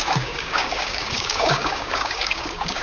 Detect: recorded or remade remade